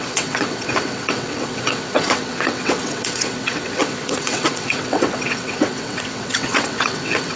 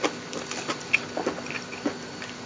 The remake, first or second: first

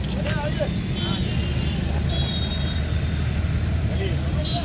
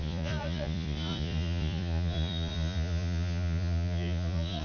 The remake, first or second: second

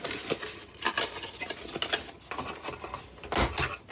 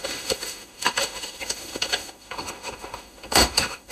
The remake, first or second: second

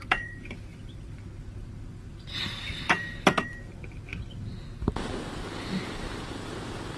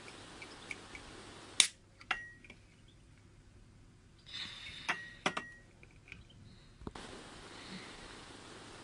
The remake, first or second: first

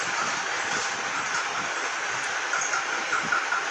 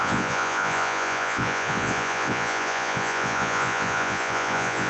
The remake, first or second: second